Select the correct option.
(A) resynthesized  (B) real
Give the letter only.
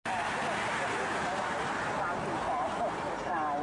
B